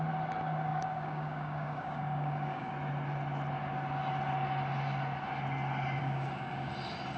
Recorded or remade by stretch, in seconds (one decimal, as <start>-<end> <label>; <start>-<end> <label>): 0.0-0.7 recorded; 0.7-2.7 remade; 2.7-6.0 recorded; 6.0-6.7 remade; 6.7-7.2 recorded